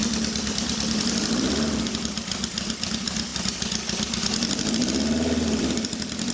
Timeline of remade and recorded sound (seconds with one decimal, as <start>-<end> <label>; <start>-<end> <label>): 0.0-2.9 remade; 2.9-3.3 recorded; 3.3-4.1 remade; 4.1-6.3 recorded